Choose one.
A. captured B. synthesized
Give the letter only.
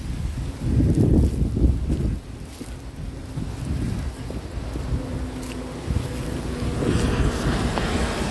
A